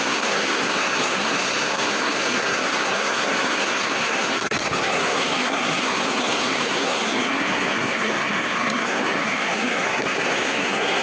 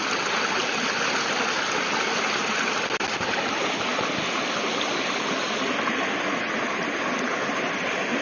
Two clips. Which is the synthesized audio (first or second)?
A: first